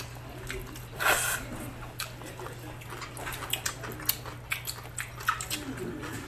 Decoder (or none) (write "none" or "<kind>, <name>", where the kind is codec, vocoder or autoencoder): none